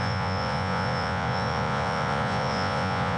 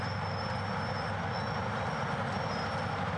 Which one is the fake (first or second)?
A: first